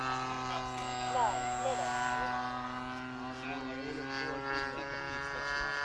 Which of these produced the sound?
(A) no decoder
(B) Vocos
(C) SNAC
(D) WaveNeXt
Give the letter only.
A